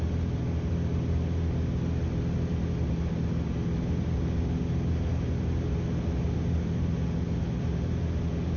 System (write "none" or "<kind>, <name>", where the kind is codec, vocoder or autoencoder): none